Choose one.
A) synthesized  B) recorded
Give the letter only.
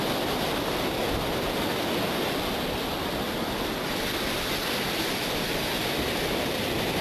B